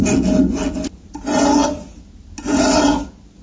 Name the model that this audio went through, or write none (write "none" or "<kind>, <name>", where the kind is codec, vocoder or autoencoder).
none